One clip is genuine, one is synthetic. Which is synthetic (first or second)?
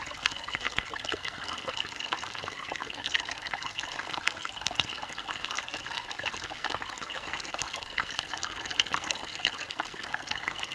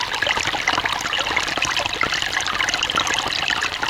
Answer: first